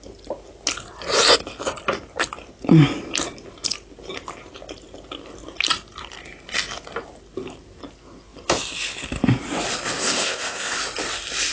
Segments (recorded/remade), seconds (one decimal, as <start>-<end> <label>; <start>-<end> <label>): 0.0-10.0 recorded; 10.0-10.8 remade; 10.8-11.5 recorded